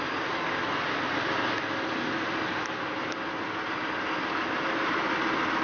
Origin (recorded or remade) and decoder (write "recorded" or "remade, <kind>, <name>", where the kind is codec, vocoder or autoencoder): recorded